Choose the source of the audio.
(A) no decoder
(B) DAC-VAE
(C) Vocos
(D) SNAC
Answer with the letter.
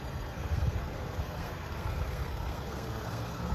D